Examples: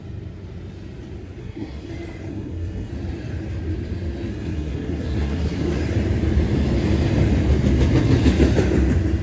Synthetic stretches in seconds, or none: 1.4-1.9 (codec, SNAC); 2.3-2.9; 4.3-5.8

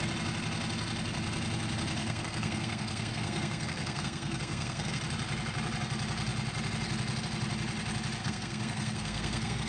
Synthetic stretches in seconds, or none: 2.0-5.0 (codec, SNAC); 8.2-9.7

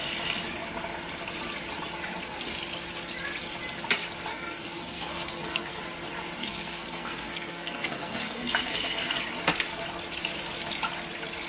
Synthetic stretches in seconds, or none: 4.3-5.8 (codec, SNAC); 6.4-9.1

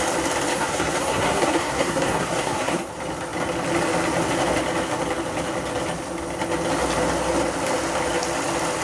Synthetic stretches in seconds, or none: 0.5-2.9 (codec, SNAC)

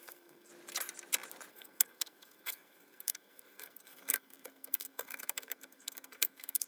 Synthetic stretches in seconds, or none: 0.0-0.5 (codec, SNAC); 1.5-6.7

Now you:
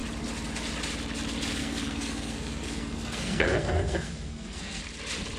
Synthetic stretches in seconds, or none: 1.6-4.8 (codec, SNAC)

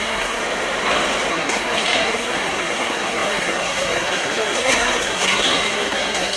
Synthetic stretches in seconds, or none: 0.0-0.4 (codec, SNAC); 1.3-6.4